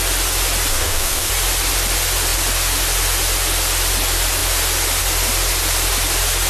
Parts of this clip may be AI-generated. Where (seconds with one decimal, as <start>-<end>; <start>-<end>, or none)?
0.7-1.3